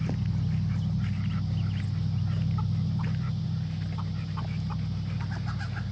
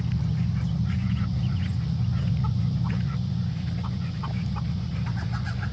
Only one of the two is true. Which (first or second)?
first